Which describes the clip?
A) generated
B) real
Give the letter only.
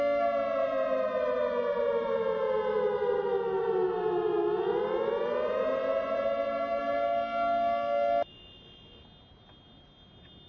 B